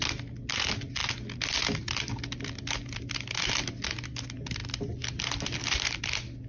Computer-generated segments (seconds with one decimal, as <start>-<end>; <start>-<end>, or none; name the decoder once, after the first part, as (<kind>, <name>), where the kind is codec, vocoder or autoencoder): none